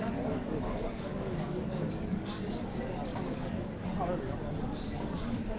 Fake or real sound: fake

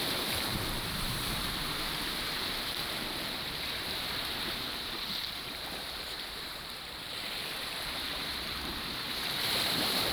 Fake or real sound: fake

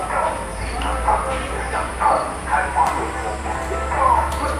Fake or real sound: fake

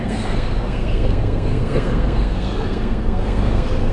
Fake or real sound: fake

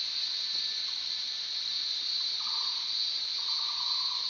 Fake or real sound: real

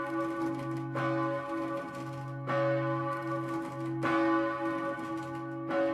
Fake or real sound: real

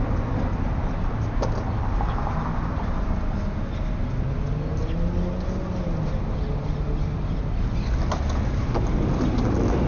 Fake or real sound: real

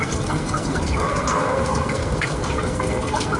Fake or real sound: fake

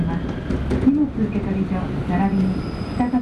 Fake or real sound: real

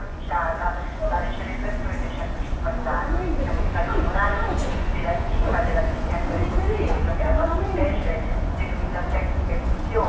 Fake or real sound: fake